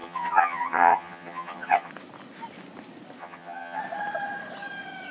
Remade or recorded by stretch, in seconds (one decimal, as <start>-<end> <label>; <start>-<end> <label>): 0.0-1.9 remade; 1.9-3.2 recorded; 3.2-3.8 remade; 3.8-5.1 recorded